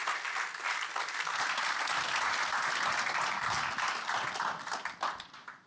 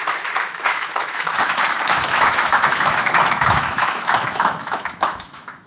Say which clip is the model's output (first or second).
second